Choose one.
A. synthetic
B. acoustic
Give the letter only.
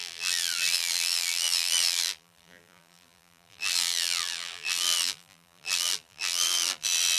A